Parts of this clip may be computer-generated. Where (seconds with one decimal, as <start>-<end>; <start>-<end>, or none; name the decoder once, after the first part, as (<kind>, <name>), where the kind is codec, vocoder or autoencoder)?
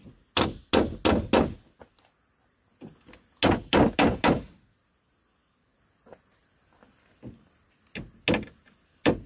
none